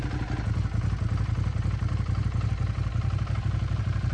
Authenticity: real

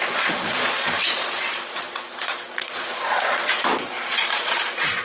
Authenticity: fake